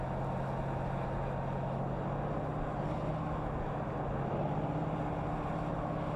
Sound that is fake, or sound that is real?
real